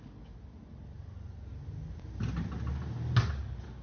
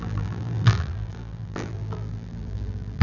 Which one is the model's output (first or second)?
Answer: second